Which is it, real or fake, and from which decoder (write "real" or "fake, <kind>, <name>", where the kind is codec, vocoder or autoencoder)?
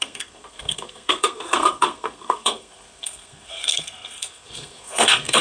fake, codec, SNAC